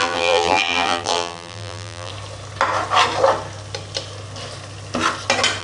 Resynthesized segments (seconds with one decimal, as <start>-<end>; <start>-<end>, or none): 0.0-2.1